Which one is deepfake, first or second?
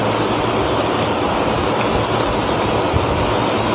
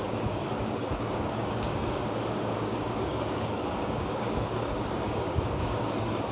second